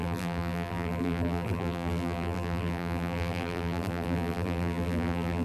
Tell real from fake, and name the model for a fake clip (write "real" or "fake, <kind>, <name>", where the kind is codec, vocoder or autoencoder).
fake, vocoder, BigVGAN v2